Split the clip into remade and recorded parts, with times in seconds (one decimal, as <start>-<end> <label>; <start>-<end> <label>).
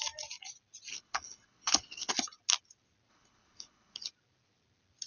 0.0-0.9 recorded; 0.9-2.1 remade; 2.1-3.1 recorded; 3.1-4.1 remade; 4.1-5.1 recorded